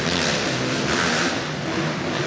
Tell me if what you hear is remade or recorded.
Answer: recorded